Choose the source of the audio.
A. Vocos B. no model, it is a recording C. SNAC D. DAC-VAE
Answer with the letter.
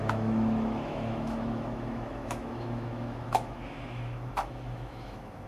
D